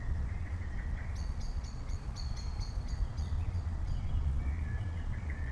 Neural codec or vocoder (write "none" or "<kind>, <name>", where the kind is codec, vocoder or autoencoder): vocoder, Vocos